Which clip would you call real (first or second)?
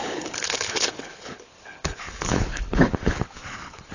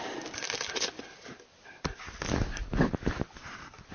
second